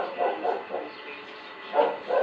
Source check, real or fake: real